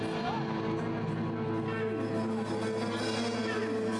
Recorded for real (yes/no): yes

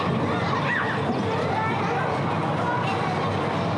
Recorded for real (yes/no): yes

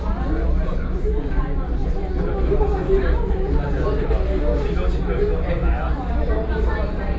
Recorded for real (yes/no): yes